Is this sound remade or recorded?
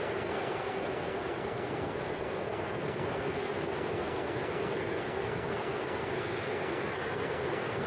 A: remade